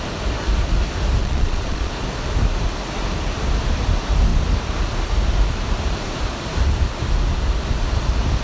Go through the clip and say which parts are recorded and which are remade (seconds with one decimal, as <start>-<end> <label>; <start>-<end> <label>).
0.0-1.2 recorded; 1.2-1.9 remade; 1.9-8.4 recorded